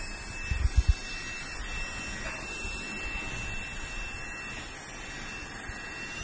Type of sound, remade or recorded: recorded